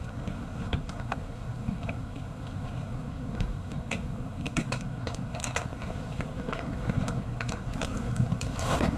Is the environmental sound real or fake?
fake